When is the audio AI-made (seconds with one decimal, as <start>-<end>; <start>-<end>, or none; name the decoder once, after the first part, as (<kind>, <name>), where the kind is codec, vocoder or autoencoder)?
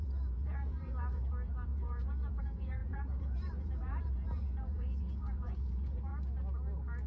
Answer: 0.0-6.1 (vocoder, Vocos)